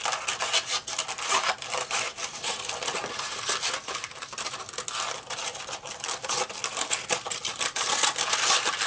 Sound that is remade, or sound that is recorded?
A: recorded